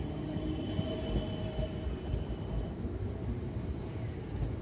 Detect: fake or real real